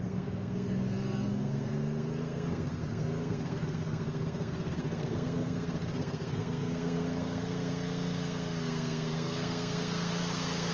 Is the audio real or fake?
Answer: fake